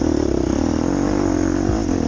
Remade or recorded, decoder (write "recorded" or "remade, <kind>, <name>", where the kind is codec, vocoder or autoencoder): recorded